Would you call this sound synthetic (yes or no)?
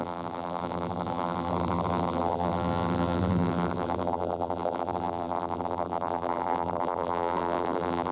yes